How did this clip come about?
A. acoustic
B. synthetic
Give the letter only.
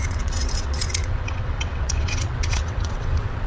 B